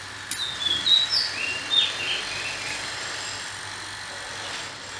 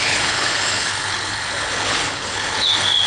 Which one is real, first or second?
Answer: first